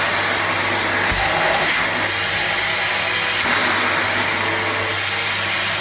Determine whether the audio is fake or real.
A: real